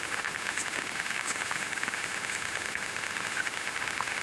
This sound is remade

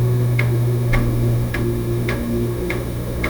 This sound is remade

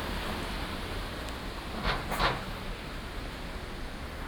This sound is recorded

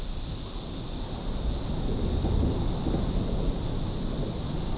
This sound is recorded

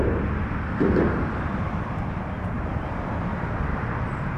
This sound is recorded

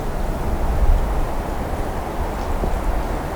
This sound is recorded